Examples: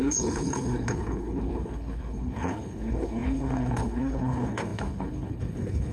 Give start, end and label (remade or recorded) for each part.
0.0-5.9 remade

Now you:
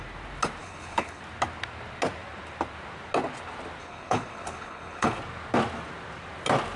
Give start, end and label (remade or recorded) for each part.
0.0-0.6 recorded; 0.6-1.2 remade; 1.2-3.8 recorded; 3.8-5.2 remade; 5.2-6.8 recorded

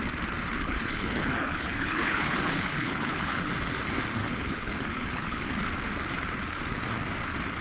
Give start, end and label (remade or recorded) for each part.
0.0-0.5 recorded; 0.5-3.5 remade; 3.5-4.2 recorded; 4.2-5.4 remade; 5.4-7.6 recorded

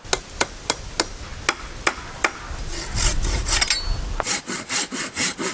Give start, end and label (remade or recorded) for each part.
0.0-5.5 recorded